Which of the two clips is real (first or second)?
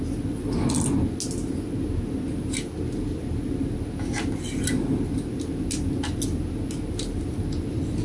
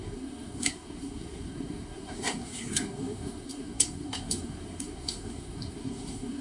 first